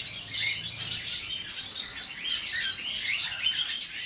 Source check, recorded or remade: recorded